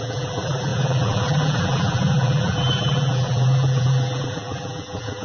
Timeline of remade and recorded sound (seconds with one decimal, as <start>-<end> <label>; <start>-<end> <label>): 0.0-5.2 remade

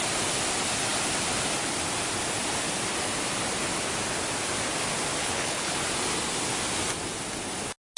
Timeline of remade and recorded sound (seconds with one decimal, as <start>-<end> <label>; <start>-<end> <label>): 0.0-5.2 recorded; 5.2-5.8 remade; 5.8-8.0 recorded

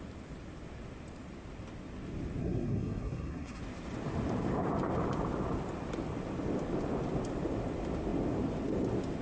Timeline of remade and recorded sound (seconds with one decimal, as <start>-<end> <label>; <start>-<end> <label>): 0.0-2.4 recorded; 2.4-3.6 remade; 3.6-9.2 recorded

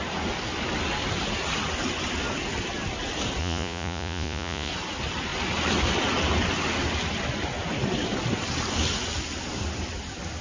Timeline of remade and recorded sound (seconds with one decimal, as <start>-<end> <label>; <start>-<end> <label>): 0.0-3.4 recorded; 3.4-4.7 remade; 4.7-10.4 recorded